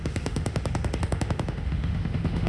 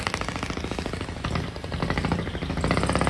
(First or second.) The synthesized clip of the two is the first